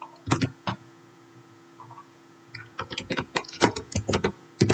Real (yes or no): no